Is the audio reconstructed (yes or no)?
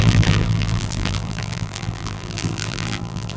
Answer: yes